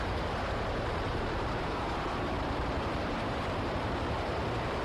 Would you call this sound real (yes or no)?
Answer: no